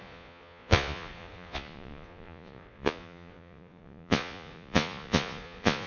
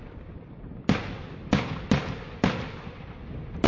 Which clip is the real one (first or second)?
second